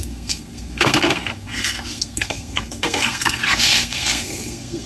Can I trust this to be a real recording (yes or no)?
no